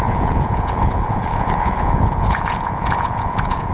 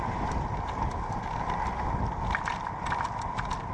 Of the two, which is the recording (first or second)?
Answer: second